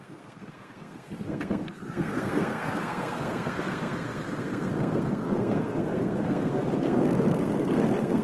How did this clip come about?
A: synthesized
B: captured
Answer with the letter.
A